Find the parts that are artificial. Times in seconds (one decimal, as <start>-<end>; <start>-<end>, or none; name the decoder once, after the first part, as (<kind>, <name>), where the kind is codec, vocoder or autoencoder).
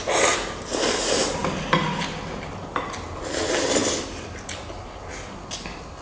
none